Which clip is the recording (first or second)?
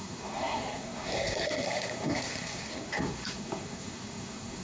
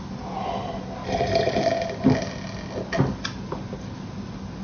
second